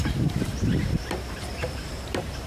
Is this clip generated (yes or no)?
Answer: yes